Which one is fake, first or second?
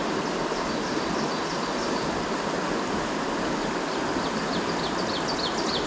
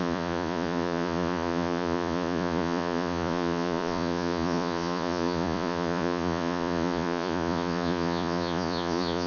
second